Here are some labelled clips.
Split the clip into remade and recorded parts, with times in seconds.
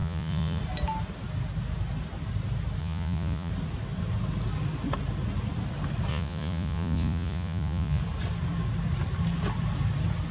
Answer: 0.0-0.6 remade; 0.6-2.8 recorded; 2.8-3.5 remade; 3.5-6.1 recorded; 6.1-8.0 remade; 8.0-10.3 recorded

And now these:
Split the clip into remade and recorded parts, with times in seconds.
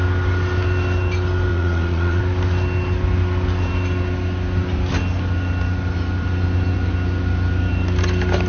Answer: 0.0-1.5 recorded; 1.5-2.2 remade; 2.2-8.5 recorded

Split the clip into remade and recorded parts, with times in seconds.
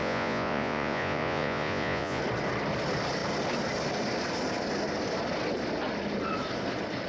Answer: 0.0-2.2 remade; 2.2-7.1 recorded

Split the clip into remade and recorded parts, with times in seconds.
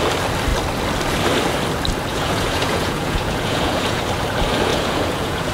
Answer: 0.0-2.1 recorded; 2.1-4.0 remade; 4.0-4.7 recorded; 4.7-5.5 remade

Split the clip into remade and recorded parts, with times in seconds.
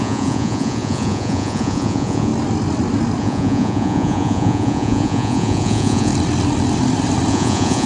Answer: 0.0-2.3 remade; 2.3-3.2 recorded; 3.2-6.1 remade; 6.1-7.3 recorded; 7.3-7.9 remade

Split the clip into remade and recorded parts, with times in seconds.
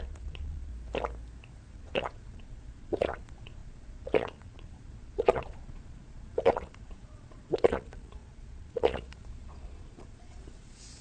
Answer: 0.0-0.7 remade; 0.7-1.7 recorded; 1.7-11.0 remade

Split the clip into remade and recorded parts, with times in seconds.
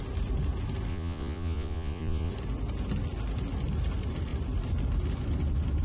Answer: 0.0-0.9 recorded; 0.9-2.3 remade; 2.3-5.8 recorded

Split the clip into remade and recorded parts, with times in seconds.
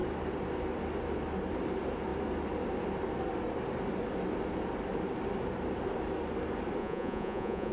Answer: 0.0-6.8 recorded; 6.8-7.7 remade